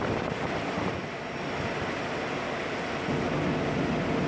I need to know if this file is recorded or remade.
recorded